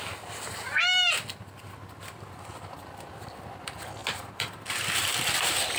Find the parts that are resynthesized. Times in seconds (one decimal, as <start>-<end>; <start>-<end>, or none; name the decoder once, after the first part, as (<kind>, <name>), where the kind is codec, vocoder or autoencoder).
4.0-5.8 (vocoder, BigVGAN v2)